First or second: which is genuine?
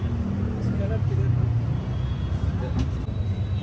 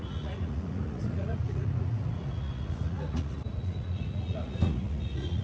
first